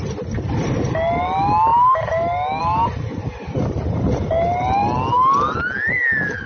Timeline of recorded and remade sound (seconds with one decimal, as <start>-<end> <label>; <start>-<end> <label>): 0.0-6.5 recorded

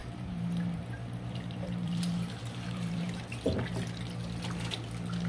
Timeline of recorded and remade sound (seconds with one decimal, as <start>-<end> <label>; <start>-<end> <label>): 0.0-3.2 remade; 3.2-5.3 recorded